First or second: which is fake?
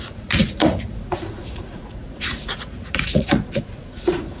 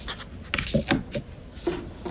first